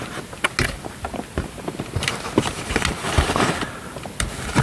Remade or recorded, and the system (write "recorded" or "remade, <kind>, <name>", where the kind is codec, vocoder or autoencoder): recorded